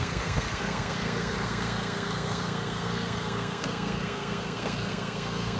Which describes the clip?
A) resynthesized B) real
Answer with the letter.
A